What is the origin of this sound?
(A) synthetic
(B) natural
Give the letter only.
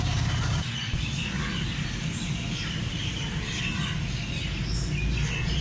B